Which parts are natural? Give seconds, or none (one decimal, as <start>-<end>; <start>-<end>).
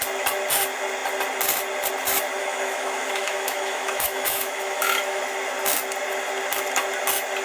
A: 0.0-2.4; 5.2-7.4